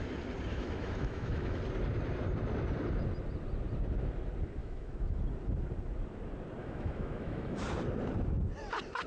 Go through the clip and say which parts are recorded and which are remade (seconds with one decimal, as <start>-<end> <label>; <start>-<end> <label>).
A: 0.0-0.5 recorded; 0.5-1.6 remade; 1.6-4.6 recorded; 4.6-5.2 remade; 5.2-6.6 recorded; 6.6-7.6 remade; 7.6-9.1 recorded